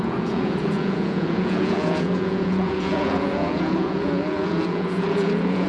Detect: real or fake fake